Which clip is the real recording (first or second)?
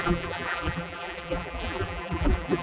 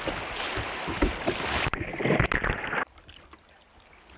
second